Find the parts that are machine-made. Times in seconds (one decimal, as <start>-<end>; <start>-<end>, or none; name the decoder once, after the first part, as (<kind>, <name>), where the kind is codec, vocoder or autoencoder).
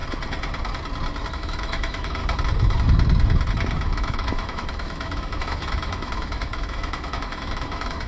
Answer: 1.3-2.2 (autoencoder, DAC-VAE); 3.9-8.1